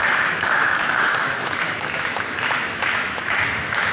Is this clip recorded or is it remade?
remade